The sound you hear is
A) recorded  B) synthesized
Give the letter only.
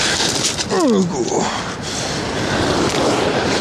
A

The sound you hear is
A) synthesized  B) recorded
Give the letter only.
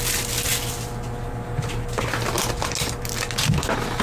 B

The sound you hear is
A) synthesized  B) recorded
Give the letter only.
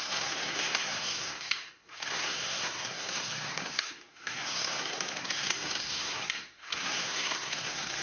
A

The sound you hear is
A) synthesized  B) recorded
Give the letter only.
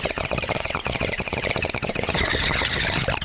B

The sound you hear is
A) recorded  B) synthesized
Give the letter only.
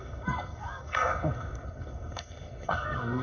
B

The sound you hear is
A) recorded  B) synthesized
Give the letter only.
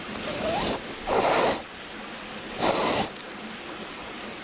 A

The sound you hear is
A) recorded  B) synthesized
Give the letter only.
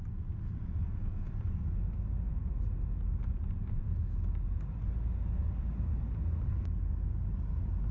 A